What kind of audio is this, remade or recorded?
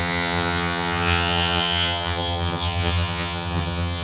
remade